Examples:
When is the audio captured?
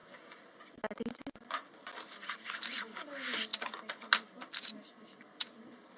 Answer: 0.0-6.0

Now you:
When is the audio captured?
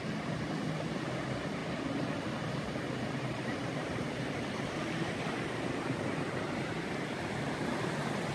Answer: 0.0-8.3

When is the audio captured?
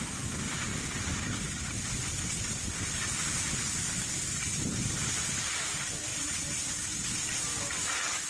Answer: 0.0-8.3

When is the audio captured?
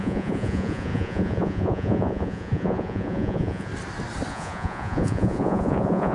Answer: 3.7-4.3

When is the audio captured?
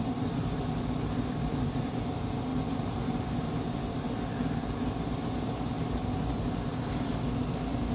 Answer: none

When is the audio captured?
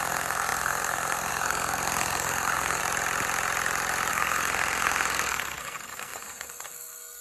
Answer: 2.8-4.1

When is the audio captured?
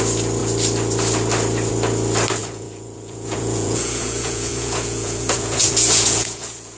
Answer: 0.0-2.4